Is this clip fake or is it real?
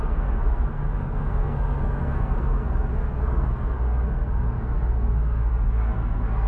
fake